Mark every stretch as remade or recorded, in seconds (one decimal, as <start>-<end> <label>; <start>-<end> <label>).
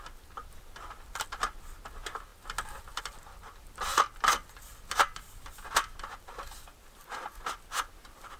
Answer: 0.0-8.4 recorded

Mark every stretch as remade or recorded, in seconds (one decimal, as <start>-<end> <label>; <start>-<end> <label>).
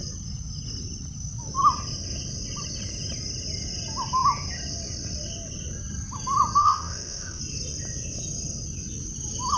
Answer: 0.0-6.6 recorded; 6.6-7.4 remade; 7.4-9.6 recorded